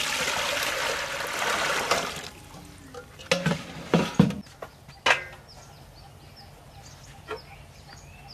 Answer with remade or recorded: recorded